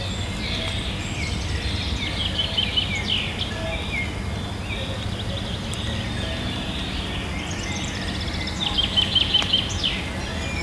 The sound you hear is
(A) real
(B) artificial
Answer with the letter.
A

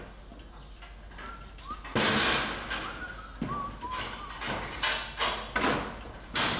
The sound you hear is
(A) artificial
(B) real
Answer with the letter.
B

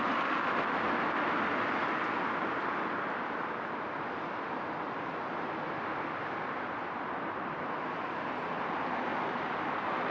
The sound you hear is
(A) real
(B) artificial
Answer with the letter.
A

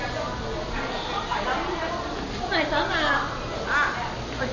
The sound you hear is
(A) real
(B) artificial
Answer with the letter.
A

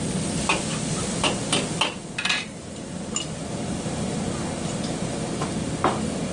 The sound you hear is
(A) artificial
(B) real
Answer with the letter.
B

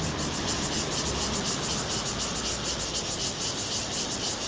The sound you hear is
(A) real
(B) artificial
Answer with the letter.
A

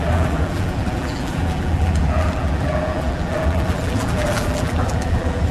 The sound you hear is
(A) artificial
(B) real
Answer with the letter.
A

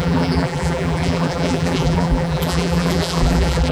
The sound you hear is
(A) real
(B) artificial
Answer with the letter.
B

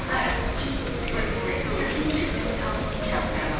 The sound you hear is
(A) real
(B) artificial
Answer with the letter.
A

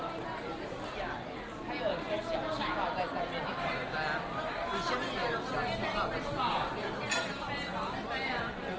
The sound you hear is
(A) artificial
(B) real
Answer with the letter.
B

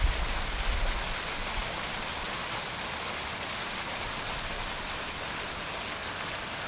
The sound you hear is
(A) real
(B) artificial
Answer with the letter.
A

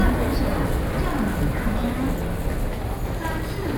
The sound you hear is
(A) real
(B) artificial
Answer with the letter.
A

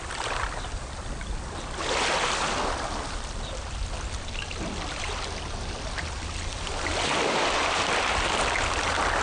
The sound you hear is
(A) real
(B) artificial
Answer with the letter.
A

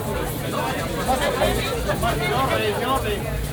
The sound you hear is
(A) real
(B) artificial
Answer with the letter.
A